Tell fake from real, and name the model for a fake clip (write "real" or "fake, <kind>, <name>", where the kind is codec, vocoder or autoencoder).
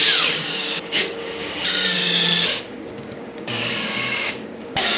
fake, codec, DAC